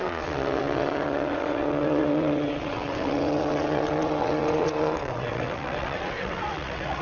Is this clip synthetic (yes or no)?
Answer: yes